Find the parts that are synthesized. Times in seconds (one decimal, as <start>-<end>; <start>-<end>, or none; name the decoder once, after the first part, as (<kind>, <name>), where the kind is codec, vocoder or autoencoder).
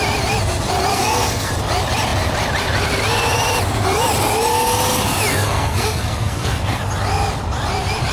0.9-1.5 (codec, SNAC); 5.3-6.8